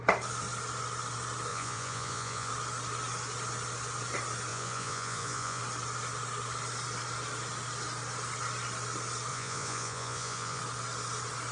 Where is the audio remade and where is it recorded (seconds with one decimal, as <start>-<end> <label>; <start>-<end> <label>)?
0.0-1.5 recorded; 1.5-2.5 remade; 2.5-4.5 recorded; 4.5-5.6 remade; 5.6-9.3 recorded; 9.3-10.6 remade; 10.6-11.5 recorded